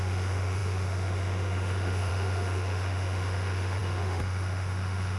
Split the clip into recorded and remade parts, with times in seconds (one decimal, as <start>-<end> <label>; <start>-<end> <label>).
0.0-5.2 remade